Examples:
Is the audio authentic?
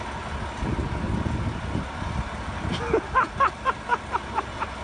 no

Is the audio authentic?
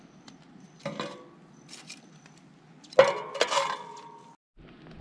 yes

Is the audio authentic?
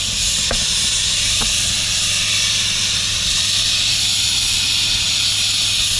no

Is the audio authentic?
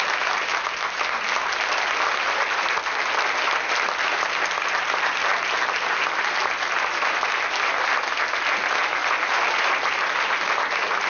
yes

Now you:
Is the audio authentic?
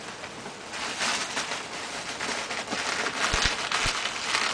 yes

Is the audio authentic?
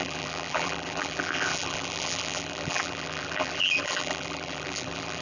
no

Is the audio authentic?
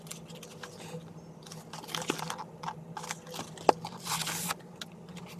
yes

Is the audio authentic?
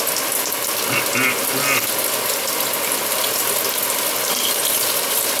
yes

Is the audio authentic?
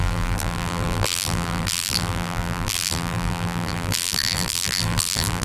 no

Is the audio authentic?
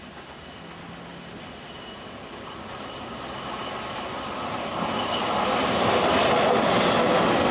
yes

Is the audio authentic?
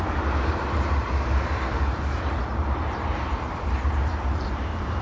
no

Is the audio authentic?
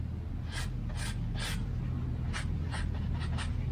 yes